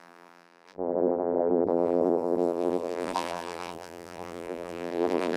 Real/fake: fake